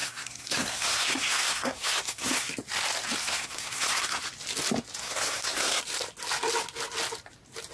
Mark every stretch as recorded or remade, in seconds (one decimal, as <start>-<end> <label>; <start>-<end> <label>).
0.0-2.5 remade; 2.5-3.2 recorded; 3.2-4.2 remade; 4.2-5.0 recorded; 5.0-5.8 remade; 5.8-7.7 recorded